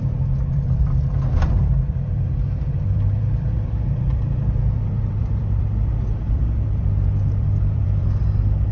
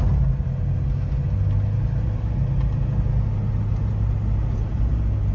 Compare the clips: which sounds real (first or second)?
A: second